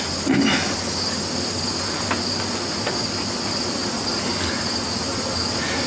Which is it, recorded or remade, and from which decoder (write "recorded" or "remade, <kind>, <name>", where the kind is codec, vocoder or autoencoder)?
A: recorded